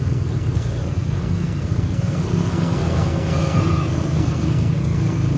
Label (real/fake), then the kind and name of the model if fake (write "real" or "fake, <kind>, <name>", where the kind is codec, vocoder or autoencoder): fake, codec, SNAC